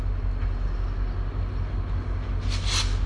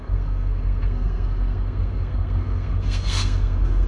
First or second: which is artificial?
second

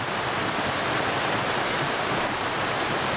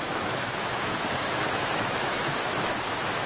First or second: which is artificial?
second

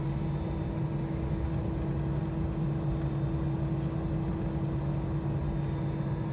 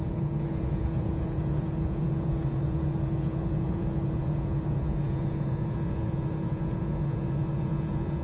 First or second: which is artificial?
second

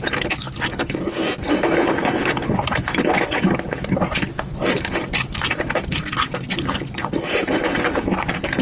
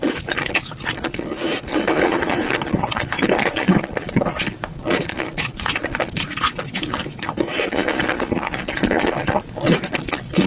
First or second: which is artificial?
second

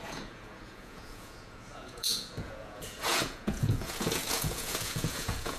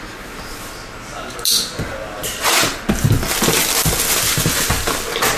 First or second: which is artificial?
first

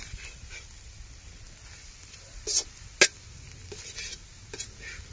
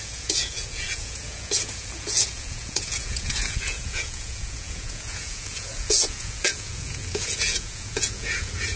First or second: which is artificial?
second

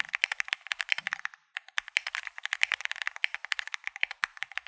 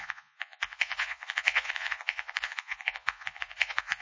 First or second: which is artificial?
second